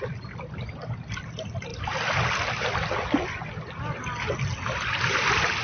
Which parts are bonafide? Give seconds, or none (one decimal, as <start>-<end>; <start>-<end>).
0.0-5.6